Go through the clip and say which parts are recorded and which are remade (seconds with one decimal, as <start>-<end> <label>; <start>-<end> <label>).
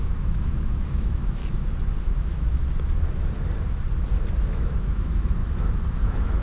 0.0-1.4 remade; 1.4-2.0 recorded; 2.0-2.6 remade; 2.6-4.5 recorded; 4.5-5.4 remade; 5.4-5.9 recorded; 5.9-6.4 remade